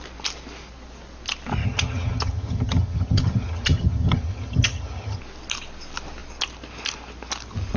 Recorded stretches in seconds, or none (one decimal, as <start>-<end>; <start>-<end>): 0.0-1.6; 5.2-7.8